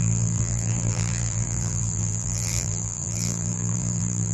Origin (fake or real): fake